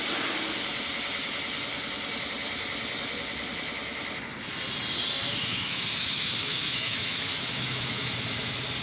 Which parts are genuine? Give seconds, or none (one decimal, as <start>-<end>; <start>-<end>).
0.0-5.4; 8.0-8.8